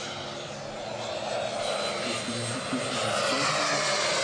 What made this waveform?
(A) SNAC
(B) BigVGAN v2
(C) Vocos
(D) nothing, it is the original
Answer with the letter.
D